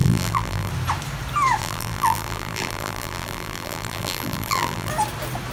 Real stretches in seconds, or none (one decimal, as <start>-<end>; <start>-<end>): 0.7-1.6; 4.9-5.5